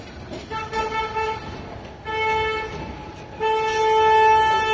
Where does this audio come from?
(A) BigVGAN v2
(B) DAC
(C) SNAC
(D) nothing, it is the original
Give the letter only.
D